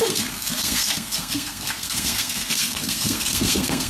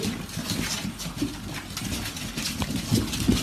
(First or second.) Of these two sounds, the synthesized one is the first